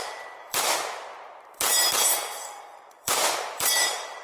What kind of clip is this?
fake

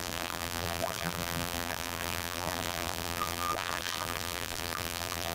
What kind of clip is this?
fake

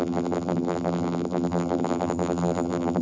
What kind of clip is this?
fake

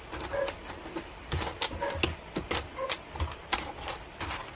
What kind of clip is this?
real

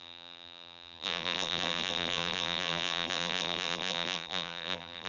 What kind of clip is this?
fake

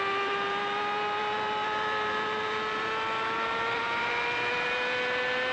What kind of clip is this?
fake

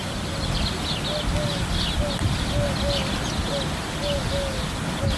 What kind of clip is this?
real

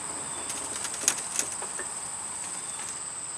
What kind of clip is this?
real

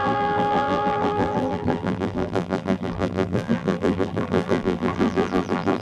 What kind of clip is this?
fake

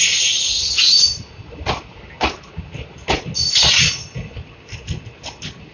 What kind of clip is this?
real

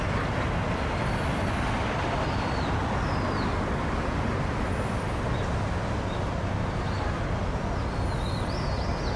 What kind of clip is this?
real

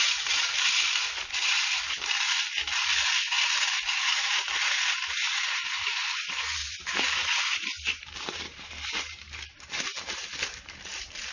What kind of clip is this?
fake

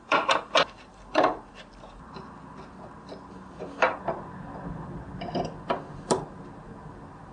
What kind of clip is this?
fake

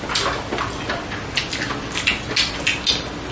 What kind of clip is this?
real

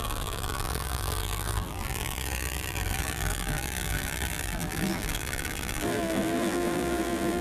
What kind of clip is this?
fake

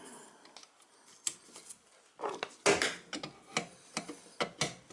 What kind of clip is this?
real